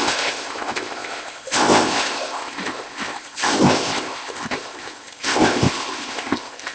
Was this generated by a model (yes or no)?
yes